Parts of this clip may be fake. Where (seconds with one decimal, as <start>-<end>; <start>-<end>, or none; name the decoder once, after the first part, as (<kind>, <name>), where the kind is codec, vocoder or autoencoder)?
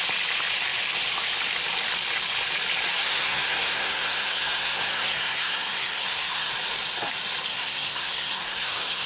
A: 2.9-6.5 (codec, SNAC); 7.5-9.1